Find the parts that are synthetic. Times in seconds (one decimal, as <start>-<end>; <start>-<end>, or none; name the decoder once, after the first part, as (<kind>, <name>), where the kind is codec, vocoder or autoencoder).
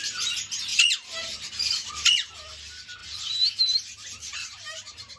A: 0.7-1.9 (vocoder, BigVGAN v2); 3.0-3.6; 4.3-5.2